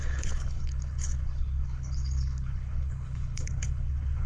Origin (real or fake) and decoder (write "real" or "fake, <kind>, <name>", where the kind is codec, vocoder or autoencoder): fake, codec, HILCodec